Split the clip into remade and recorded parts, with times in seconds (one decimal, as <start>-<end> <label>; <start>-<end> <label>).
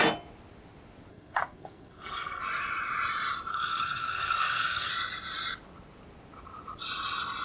0.0-1.1 recorded; 1.1-2.4 remade; 2.4-3.5 recorded; 3.5-4.9 remade; 4.9-7.4 recorded